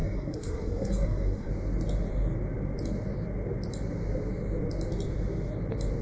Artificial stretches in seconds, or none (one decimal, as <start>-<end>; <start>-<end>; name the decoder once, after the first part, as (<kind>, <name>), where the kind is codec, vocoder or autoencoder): 0.0-1.5 (codec, SNAC)